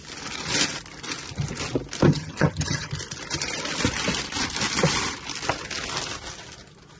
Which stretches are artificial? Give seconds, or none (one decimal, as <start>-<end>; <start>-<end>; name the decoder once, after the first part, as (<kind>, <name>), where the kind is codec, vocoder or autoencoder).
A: 2.1-2.9 (vocoder, HiFi-GAN)